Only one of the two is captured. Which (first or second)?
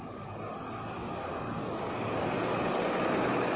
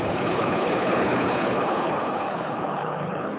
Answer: first